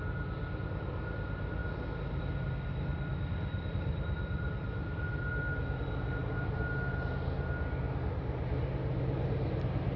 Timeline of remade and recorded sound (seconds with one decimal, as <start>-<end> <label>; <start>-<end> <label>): 0.0-10.0 recorded